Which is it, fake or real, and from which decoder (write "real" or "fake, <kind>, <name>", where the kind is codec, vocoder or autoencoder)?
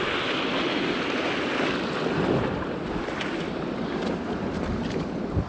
real